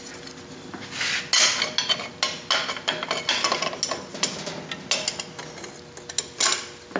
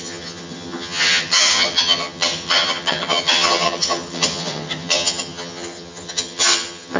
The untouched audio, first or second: first